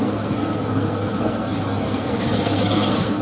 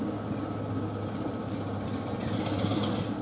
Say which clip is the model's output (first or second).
first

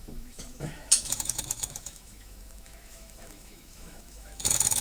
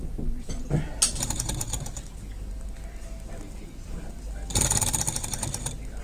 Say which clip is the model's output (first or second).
first